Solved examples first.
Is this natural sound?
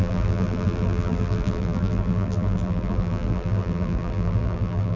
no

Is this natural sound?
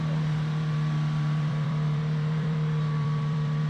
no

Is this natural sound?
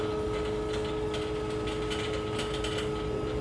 yes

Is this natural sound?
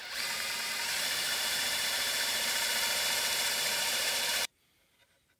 no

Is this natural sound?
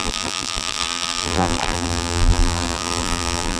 no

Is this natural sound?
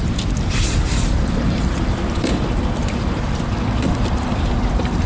no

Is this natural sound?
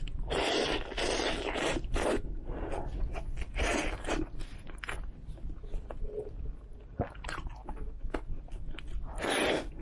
yes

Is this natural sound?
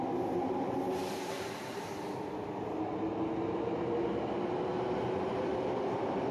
yes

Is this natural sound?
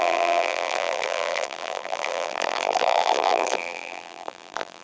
no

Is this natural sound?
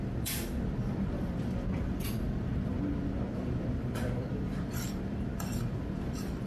no